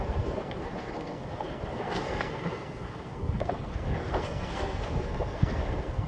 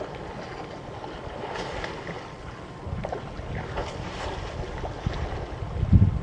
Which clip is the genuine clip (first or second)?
second